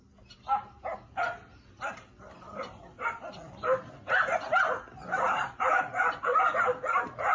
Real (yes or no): yes